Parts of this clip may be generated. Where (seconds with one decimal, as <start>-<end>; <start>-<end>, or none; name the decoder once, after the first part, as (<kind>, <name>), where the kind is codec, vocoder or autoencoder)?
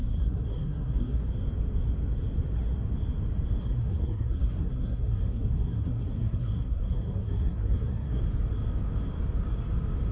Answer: 0.0-1.2 (codec, SNAC); 3.6-8.2